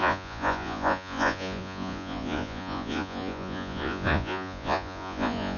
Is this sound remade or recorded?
remade